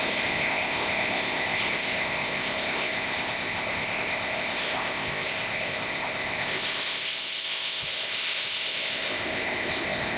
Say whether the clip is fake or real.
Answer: fake